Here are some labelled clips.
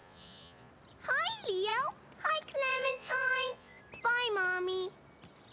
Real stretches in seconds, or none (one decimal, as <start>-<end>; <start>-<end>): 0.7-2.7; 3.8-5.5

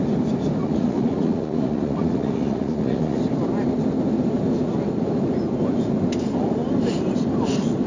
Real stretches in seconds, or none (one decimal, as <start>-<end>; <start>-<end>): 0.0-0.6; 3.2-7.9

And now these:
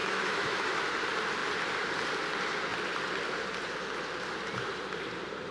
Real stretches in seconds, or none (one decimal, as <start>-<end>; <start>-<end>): 0.8-5.5